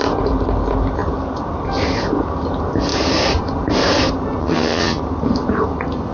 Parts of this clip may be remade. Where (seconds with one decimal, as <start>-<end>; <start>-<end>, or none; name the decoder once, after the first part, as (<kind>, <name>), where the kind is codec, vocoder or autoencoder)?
4.4-5.0 (vocoder, HiFi-GAN)